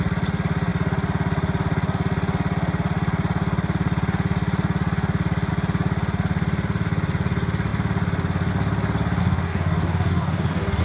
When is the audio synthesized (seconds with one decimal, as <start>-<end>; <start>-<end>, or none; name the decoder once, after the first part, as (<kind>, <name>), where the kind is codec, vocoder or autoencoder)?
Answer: 9.2-10.8 (codec, DAC)